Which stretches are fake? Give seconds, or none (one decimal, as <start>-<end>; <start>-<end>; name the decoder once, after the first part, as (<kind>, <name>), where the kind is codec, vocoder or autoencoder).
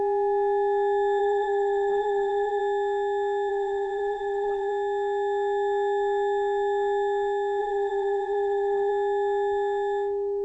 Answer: 1.2-2.6 (vocoder, Vocos); 3.5-4.7; 7.6-8.9